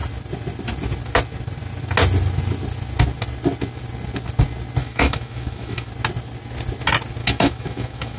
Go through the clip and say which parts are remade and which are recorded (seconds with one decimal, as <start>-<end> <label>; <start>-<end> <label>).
0.0-4.8 recorded; 4.8-5.9 remade; 5.9-7.2 recorded; 7.2-8.2 remade